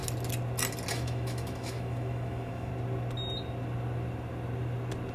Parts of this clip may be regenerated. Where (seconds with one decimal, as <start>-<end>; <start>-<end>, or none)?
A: 0.9-2.7